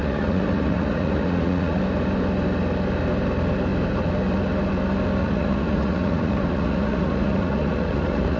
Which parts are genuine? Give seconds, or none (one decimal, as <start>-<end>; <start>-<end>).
1.8-5.2